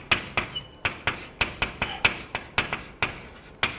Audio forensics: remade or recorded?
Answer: recorded